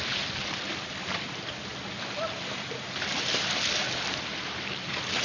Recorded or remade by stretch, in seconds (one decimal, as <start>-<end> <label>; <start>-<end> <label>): 0.0-1.7 recorded; 1.7-3.8 remade; 3.8-5.2 recorded